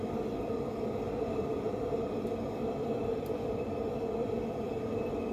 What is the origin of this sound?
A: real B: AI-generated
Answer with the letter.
B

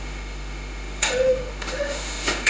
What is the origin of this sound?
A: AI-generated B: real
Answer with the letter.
A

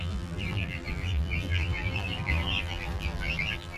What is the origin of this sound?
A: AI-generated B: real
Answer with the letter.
A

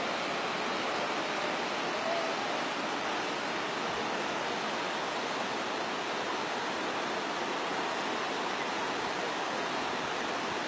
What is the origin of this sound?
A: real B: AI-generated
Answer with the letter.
A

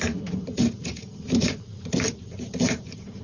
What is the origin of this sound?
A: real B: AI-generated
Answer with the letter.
B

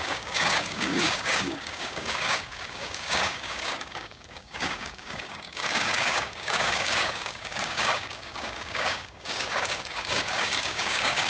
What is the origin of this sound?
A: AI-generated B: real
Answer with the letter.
A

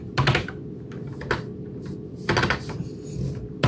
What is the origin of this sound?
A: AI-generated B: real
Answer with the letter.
B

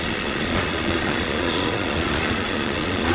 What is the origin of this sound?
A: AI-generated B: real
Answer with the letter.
A